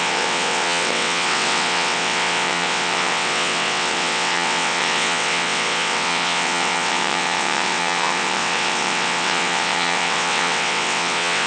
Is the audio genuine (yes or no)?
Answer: no